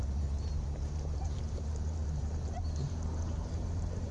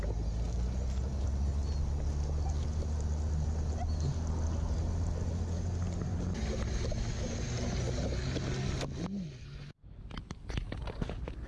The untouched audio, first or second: second